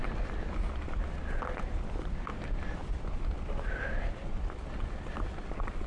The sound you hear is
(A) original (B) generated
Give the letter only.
A